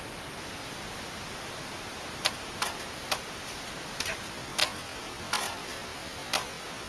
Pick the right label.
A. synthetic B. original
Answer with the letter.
B